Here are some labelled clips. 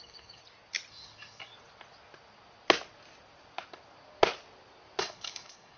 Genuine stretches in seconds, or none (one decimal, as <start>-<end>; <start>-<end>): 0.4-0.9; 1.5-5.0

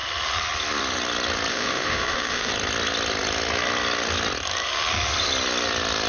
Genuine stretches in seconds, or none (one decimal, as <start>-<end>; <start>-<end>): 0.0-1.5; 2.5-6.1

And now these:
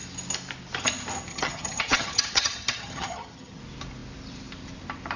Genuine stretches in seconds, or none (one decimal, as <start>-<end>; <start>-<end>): 0.0-1.3; 3.6-5.2